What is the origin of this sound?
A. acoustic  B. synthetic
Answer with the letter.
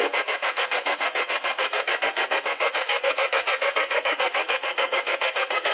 B